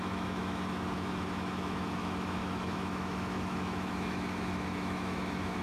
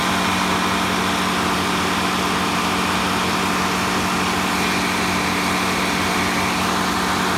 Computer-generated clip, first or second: first